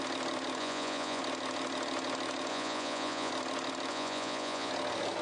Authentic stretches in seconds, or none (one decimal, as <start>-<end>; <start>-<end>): 0.0-0.6; 1.2-2.5; 3.3-3.9; 4.7-5.2